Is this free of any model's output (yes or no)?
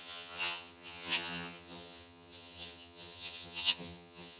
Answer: no